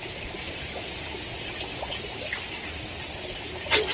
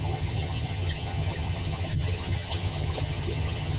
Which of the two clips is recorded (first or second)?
first